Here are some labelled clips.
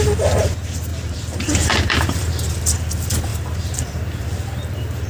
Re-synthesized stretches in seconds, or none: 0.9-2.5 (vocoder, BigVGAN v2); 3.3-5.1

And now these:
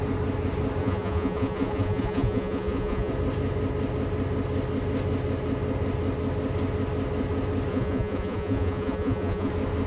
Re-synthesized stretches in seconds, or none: 0.8-3.1 (vocoder, Vocos); 7.7-9.5

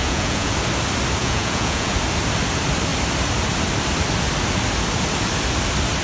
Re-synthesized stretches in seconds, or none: 0.0-0.5 (vocoder, Vocos); 1.2-1.9

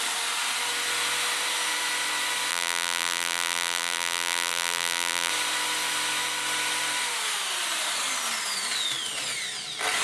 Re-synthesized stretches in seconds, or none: 2.5-5.3 (vocoder, BigVGAN v2)